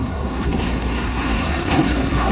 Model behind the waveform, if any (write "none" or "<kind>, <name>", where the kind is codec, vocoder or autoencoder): codec, SNAC